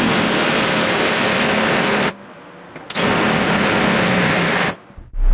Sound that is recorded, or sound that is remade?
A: recorded